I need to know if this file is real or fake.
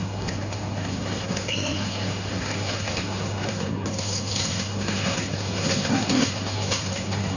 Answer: fake